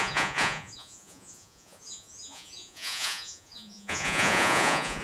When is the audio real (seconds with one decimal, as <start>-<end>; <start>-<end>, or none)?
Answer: none